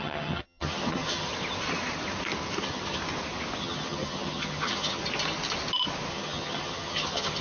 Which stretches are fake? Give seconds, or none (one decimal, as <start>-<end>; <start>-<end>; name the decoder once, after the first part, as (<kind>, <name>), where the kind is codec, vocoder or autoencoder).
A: 0.0-1.3 (vocoder, HiFi-GAN); 2.6-3.0; 3.6-5.0; 6.1-7.4